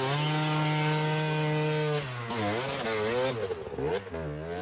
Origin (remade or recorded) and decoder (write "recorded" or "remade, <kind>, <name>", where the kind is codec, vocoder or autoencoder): recorded